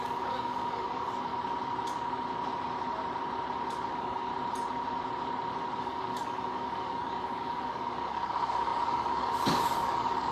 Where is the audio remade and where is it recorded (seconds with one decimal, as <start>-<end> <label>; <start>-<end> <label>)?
0.0-1.3 remade; 1.3-3.9 recorded; 3.9-4.3 remade; 4.3-5.8 recorded; 5.8-10.3 remade

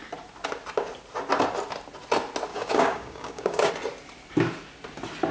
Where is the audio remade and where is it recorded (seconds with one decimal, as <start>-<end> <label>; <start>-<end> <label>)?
0.0-2.5 recorded; 2.5-3.7 remade; 3.7-5.3 recorded

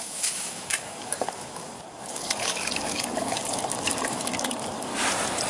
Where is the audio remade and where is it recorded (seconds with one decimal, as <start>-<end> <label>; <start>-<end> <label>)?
0.0-4.9 remade; 4.9-5.5 recorded

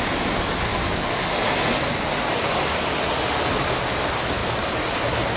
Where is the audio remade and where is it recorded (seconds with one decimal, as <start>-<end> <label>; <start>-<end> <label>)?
0.0-5.4 recorded

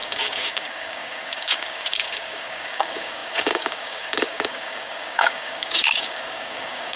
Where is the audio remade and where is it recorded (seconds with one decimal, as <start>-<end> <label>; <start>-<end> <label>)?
0.0-7.0 remade